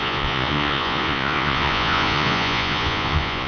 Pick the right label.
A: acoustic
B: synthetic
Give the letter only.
B